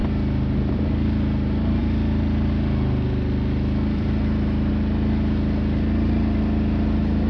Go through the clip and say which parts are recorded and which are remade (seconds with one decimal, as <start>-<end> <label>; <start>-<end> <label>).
0.0-0.7 remade; 0.7-1.8 recorded; 1.8-4.7 remade; 4.7-7.3 recorded